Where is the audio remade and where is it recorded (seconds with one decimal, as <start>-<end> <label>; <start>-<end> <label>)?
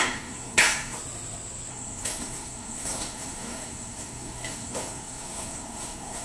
0.0-1.0 remade; 1.0-1.7 recorded; 1.7-6.2 remade